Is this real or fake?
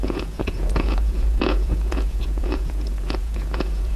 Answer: fake